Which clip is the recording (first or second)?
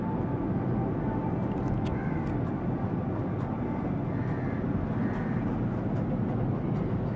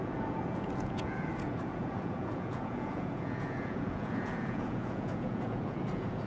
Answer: first